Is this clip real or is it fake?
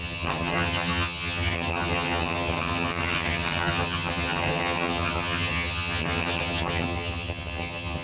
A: fake